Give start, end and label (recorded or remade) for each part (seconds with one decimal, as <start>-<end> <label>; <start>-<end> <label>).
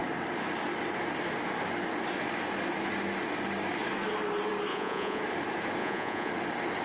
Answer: 0.0-4.7 recorded; 4.7-5.2 remade; 5.2-5.8 recorded; 5.8-6.3 remade; 6.3-6.8 recorded